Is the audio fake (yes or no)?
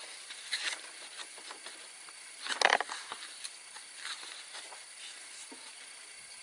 no